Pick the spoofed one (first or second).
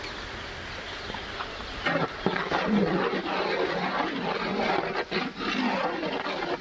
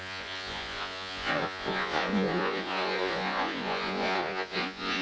second